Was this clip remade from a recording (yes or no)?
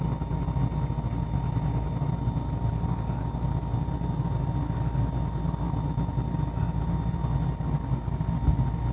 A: no